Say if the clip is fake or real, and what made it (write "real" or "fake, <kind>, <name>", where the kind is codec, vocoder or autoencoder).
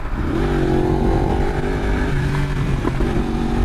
fake, vocoder, BigVGAN v2